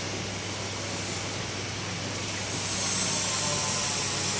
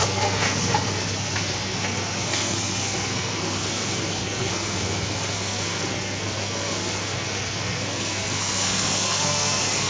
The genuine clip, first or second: first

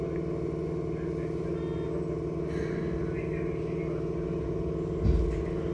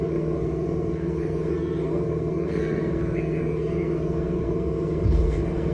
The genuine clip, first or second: first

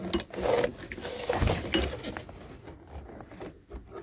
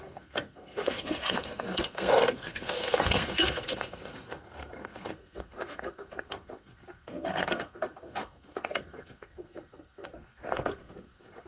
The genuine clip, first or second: first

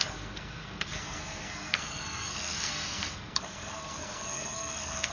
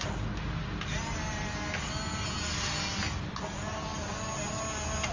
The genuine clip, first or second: second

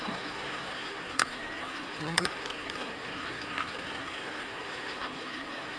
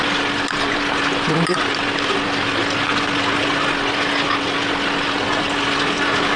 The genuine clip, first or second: second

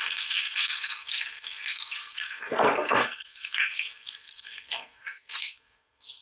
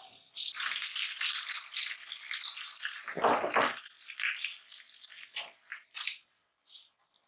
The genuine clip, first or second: second